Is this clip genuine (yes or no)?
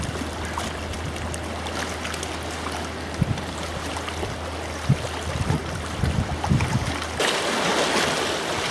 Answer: yes